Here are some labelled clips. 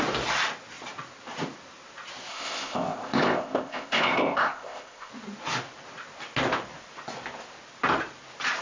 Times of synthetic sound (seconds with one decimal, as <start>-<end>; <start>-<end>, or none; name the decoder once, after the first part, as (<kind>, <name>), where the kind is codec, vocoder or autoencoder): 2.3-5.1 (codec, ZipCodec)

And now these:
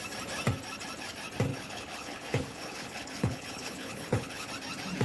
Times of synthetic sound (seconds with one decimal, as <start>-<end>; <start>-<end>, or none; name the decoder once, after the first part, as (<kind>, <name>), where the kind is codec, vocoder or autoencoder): 1.5-4.5 (codec, HILCodec)

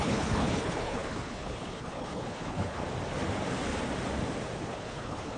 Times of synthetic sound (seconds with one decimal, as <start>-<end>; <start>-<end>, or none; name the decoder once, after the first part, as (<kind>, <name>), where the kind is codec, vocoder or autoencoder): 0.0-2.8 (codec, HILCodec); 4.6-5.4

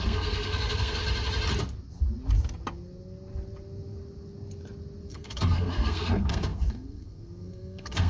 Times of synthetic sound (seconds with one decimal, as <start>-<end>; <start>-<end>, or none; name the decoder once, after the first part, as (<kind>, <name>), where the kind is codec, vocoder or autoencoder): 0.0-1.0 (codec, SNAC); 5.1-8.1

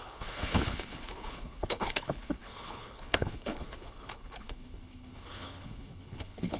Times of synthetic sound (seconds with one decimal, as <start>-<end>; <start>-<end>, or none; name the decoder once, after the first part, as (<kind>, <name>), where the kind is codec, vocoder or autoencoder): 0.0-6.6 (codec, HILCodec)

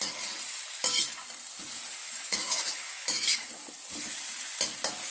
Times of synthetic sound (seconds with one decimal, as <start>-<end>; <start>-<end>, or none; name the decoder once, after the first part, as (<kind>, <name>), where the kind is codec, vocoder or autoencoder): 2.0-3.5 (autoencoder, DAC-VAE)